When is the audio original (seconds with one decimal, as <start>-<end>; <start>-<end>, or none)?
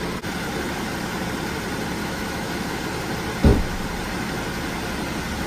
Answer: 0.0-2.0; 2.8-5.5